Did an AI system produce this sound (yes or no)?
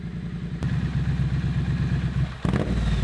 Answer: no